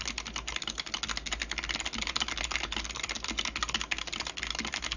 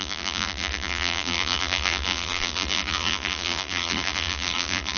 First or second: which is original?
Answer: first